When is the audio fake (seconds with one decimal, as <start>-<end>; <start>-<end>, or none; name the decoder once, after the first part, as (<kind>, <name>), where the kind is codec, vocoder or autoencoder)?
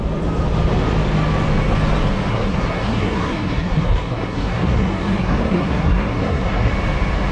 2.3-6.7 (codec, SNAC)